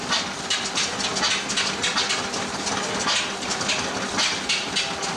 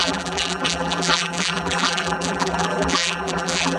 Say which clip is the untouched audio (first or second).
first